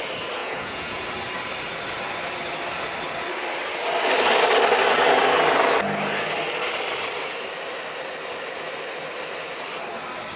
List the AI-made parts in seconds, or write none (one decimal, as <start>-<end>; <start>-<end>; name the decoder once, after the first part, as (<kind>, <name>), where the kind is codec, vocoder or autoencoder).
0.4-1.0 (vocoder, Vocos)